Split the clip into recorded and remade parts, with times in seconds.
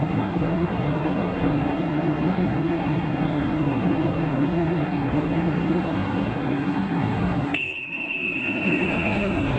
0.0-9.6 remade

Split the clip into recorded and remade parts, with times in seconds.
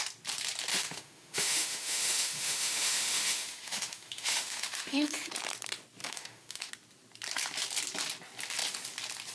0.0-0.7 recorded; 0.7-5.3 remade; 5.3-6.0 recorded; 6.0-6.7 remade; 6.7-9.3 recorded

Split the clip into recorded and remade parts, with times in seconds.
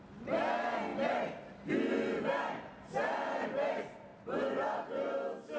0.0-5.6 recorded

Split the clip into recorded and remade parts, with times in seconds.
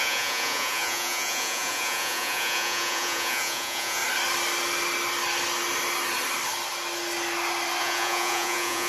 0.0-4.0 remade; 4.0-7.8 recorded; 7.8-8.9 remade